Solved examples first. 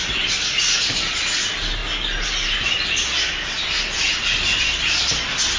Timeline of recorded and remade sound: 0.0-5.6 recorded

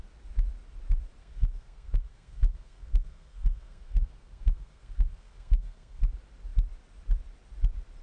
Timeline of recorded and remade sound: 0.0-1.2 recorded; 1.2-6.0 remade; 6.0-8.0 recorded

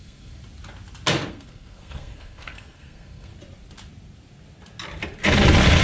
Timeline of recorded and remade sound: 0.0-0.4 remade; 0.4-1.3 recorded; 1.3-3.3 remade; 3.3-5.8 recorded

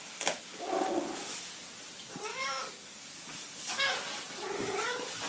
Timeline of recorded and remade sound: 0.0-0.5 recorded; 0.5-1.3 remade; 1.3-2.3 recorded; 2.3-3.9 remade; 3.9-5.3 recorded

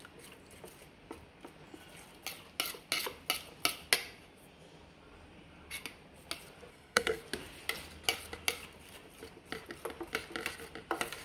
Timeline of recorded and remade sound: 0.0-6.7 recorded; 6.7-7.2 remade; 7.2-11.2 recorded

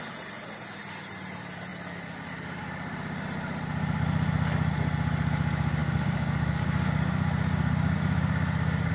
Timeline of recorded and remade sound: 0.0-5.8 recorded; 5.8-8.9 remade